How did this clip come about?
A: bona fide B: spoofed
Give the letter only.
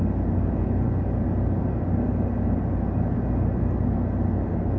A